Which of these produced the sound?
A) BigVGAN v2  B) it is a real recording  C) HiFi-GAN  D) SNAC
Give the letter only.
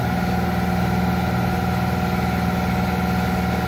B